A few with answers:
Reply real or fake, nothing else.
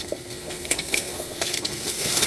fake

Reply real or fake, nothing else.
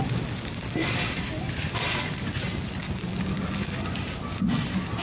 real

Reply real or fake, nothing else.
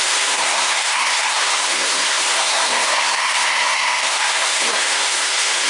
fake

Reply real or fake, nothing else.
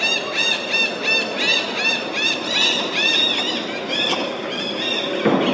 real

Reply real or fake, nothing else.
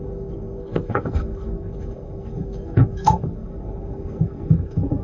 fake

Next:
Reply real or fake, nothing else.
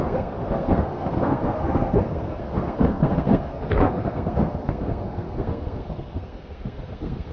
fake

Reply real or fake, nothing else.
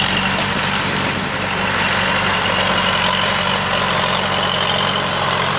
real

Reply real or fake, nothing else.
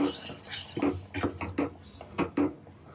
real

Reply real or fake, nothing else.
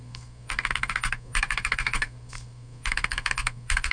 fake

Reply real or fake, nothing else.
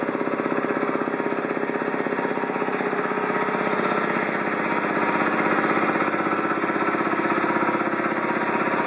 real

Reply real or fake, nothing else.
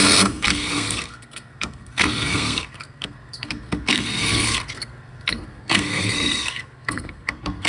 fake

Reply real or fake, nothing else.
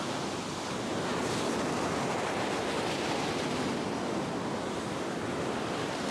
real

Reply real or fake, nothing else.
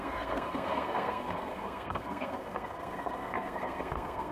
fake